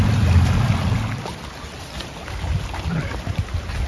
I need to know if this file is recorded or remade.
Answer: recorded